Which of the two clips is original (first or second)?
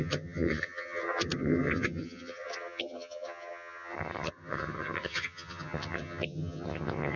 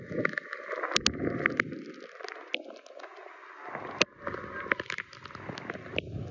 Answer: second